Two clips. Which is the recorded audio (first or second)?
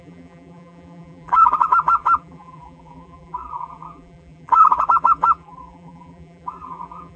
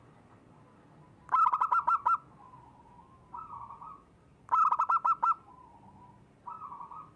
second